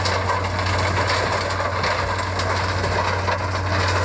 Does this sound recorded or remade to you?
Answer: recorded